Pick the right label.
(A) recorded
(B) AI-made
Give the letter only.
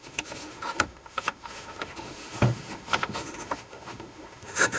B